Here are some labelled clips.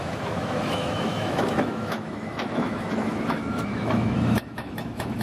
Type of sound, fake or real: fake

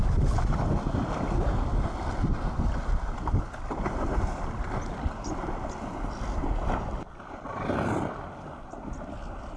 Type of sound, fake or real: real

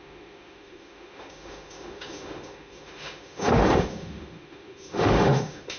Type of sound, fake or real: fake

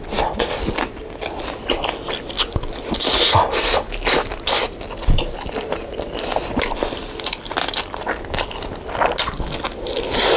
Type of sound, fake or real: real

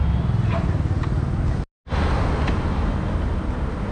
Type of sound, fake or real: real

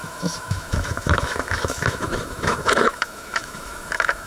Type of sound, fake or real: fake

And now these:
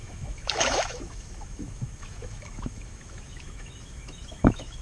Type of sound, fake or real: fake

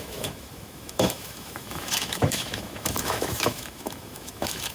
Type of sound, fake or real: fake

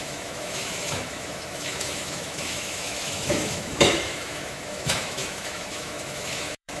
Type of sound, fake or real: fake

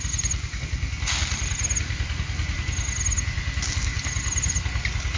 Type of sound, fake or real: real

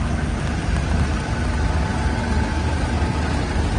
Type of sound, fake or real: real